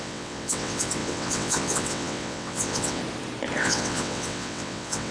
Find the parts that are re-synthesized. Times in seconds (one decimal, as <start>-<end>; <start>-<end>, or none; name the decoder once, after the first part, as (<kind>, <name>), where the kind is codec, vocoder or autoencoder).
0.0-3.0 (vocoder, WaveNeXt); 3.6-5.1